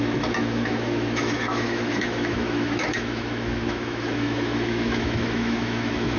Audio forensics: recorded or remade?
remade